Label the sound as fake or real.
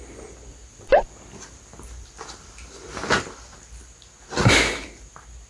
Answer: real